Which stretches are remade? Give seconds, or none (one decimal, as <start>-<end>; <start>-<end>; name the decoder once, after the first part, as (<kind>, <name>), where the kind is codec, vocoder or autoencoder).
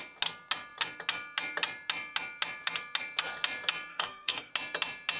3.9-4.5 (codec, SNAC)